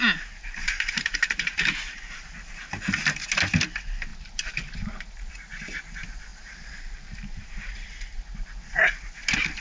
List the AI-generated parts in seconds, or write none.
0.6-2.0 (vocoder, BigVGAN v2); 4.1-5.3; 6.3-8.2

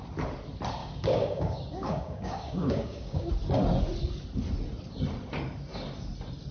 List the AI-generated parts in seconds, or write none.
0.8-3.3 (codec, DAC)

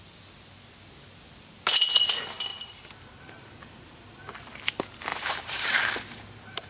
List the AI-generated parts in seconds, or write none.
2.5-3.2 (vocoder, BigVGAN v2); 5.1-6.7

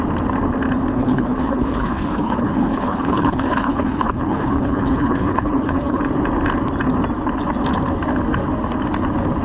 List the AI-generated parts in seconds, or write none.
0.9-6.0 (codec, HILCodec)

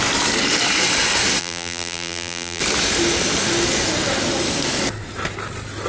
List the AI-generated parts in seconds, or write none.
1.4-2.6 (vocoder, BigVGAN v2)

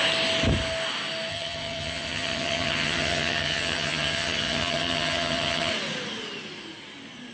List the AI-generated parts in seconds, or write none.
1.3-5.7 (vocoder, HiFi-GAN)

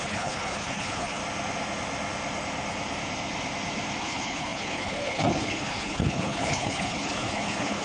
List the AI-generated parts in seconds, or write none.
0.0-1.2 (codec, HILCodec); 4.0-7.8